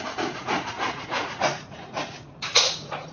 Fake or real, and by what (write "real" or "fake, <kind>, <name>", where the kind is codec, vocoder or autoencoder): fake, vocoder, Vocos